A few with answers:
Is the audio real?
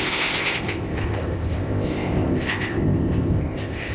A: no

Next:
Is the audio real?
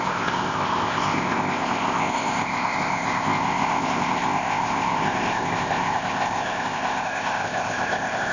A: no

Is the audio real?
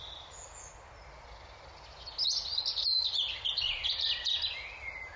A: yes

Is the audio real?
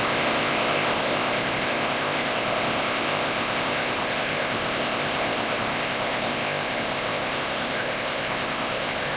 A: no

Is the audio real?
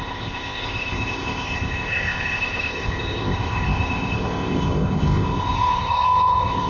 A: no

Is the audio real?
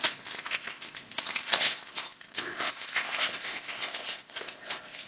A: no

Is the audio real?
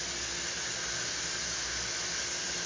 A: yes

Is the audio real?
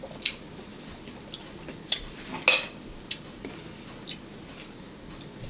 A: yes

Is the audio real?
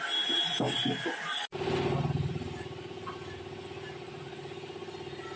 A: yes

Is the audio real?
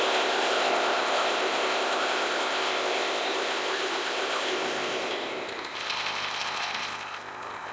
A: no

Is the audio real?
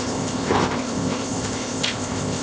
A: no